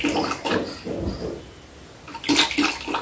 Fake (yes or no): no